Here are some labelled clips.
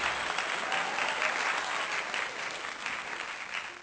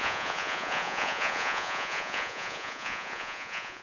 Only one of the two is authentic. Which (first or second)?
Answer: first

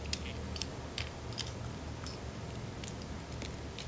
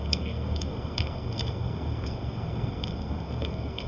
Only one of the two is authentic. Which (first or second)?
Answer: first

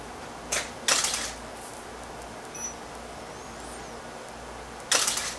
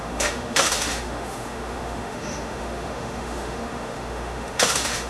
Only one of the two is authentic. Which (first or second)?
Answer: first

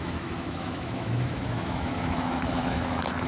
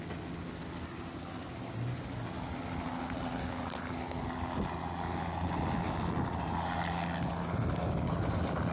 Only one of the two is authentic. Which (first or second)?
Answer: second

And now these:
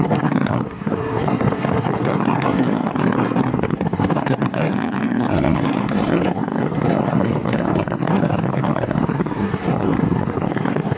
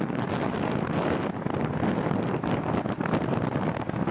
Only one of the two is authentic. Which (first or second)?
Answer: second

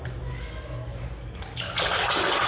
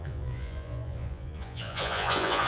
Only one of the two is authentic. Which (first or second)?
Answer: first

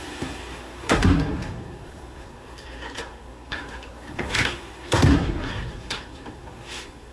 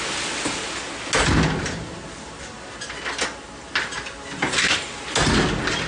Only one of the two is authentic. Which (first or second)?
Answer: second